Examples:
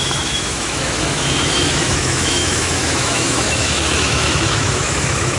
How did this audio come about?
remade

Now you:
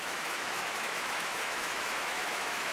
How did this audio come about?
remade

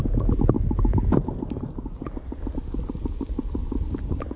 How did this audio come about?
recorded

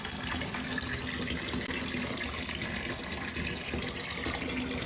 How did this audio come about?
recorded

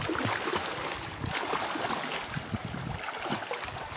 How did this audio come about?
recorded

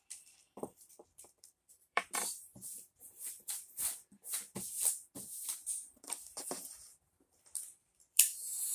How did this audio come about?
remade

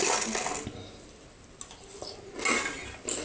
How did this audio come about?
recorded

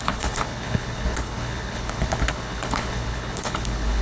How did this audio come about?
remade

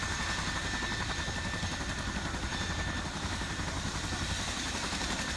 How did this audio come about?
recorded